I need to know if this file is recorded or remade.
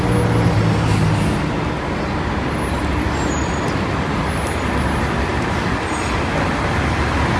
recorded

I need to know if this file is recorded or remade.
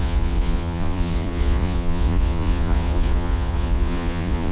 remade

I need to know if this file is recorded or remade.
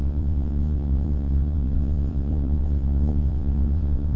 remade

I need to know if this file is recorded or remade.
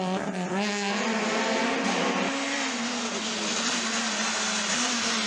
recorded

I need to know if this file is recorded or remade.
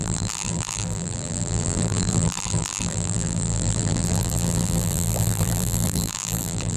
remade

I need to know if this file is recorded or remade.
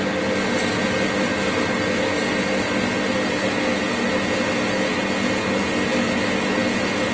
recorded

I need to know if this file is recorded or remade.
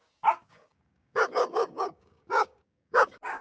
remade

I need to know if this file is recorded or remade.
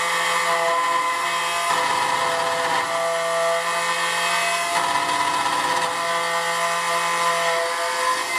recorded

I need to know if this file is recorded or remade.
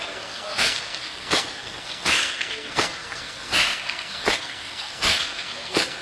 remade